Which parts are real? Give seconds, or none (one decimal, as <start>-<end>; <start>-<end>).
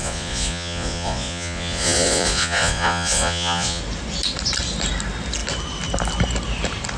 3.8-7.0